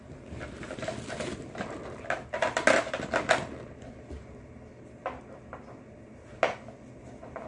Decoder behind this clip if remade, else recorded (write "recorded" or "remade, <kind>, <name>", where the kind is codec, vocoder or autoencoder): recorded